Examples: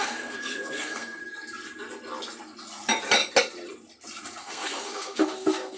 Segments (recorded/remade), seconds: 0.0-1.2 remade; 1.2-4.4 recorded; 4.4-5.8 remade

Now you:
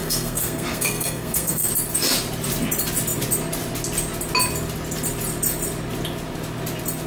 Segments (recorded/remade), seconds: 0.0-1.7 remade; 1.7-7.1 recorded

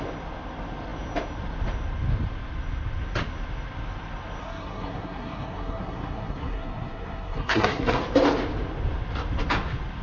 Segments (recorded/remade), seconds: 0.0-4.4 recorded; 4.4-8.0 remade; 8.0-10.0 recorded

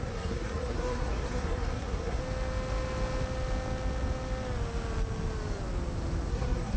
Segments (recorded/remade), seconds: 0.0-2.2 remade; 2.2-6.3 recorded; 6.3-6.8 remade

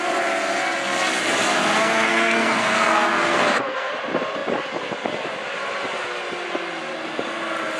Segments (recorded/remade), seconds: 0.0-1.8 recorded; 1.8-3.9 remade; 3.9-7.8 recorded

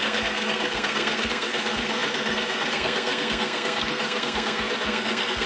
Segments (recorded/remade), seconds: 0.0-5.5 remade